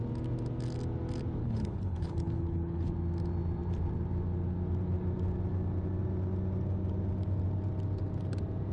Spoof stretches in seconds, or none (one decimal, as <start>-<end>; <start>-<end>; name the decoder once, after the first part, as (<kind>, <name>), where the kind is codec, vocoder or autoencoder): 1.4-2.9 (codec, HILCodec)